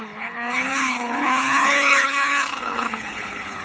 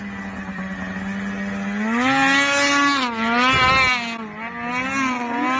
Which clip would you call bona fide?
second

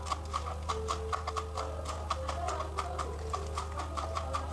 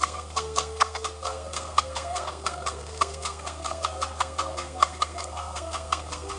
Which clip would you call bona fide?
first